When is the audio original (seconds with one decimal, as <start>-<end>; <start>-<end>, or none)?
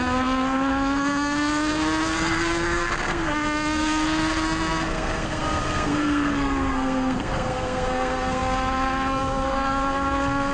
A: none